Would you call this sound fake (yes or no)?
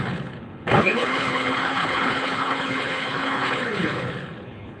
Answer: yes